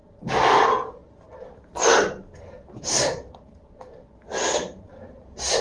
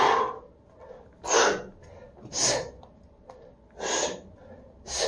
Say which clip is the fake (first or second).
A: first